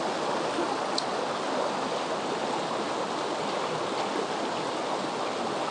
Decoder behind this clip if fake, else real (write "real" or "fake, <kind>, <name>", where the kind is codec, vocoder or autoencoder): real